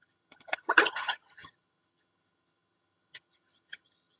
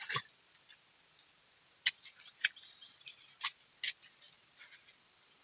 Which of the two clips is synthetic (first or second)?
first